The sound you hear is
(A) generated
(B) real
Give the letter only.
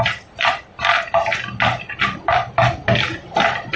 B